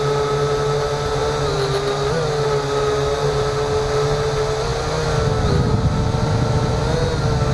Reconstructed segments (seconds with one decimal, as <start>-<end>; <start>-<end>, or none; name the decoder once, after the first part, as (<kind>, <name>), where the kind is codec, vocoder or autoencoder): none